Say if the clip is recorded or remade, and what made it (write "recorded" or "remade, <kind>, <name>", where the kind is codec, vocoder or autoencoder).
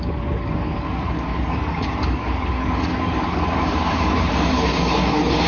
remade, codec, DAC